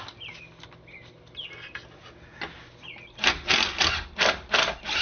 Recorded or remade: recorded